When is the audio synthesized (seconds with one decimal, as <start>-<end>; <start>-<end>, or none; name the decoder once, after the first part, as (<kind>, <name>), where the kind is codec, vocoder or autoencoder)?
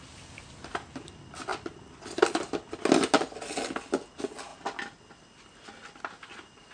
none